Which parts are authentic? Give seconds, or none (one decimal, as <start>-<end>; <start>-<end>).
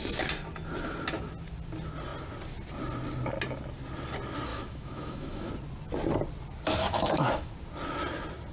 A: 0.0-4.5; 5.5-6.8; 7.5-8.5